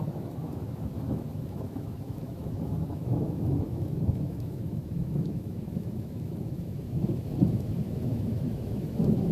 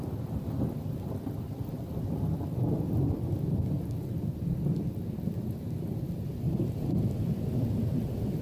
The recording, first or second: second